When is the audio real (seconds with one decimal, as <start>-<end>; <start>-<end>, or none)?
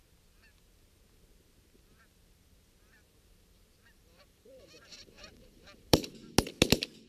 0.0-4.0; 6.1-7.1